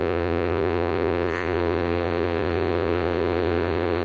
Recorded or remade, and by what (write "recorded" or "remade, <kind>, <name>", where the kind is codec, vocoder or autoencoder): remade, vocoder, Vocos